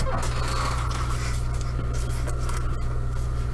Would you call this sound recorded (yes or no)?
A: yes